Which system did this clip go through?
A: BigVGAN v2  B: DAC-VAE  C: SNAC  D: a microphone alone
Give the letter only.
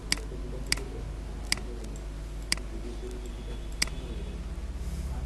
D